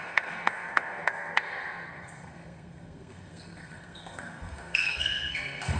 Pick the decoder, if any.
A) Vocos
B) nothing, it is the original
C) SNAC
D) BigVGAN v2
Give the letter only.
C